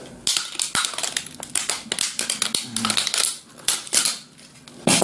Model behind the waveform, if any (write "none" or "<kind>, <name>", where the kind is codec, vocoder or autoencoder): none